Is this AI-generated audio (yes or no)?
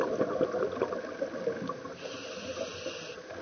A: no